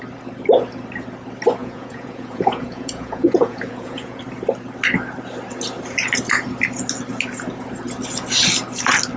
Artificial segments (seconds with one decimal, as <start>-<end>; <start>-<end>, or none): 1.6-4.2